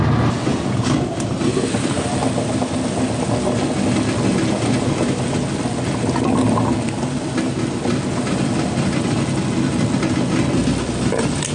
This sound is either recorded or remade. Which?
recorded